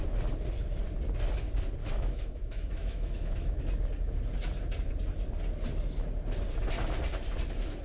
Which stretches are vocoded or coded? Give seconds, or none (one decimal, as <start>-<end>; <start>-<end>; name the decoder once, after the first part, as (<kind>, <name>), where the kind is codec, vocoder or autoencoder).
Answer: 1.8-3.6 (autoencoder, DAC-VAE)